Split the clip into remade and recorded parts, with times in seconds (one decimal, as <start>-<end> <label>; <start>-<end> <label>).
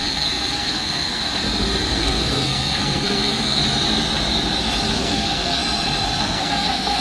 0.0-1.2 remade; 1.2-1.8 recorded; 1.8-3.6 remade; 3.6-4.9 recorded; 4.9-5.6 remade; 5.6-6.2 recorded; 6.2-7.0 remade